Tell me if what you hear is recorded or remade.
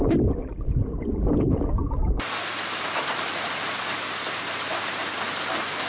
recorded